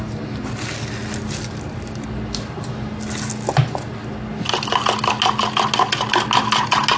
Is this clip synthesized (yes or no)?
no